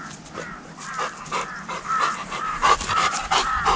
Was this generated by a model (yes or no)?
no